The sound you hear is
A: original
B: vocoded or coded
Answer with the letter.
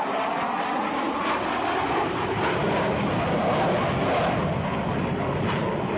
A